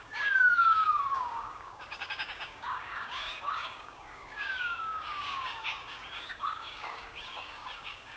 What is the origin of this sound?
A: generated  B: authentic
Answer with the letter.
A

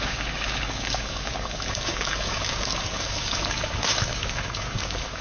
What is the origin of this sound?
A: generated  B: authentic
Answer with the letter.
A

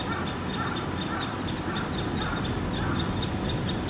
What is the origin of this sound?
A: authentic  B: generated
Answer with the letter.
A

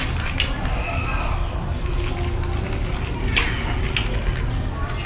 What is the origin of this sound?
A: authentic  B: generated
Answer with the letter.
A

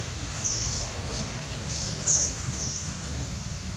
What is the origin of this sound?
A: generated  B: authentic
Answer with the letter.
A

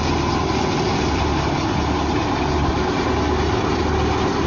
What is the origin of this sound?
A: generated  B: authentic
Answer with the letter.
B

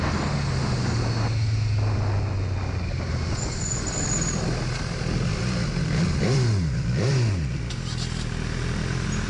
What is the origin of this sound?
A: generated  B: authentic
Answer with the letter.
B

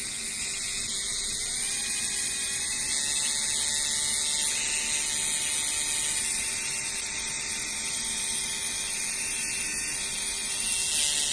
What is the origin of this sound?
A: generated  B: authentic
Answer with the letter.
B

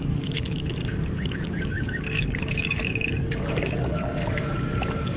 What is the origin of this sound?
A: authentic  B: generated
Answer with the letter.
B